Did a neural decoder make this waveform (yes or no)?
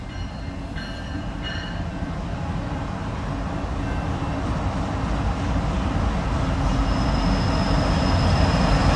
no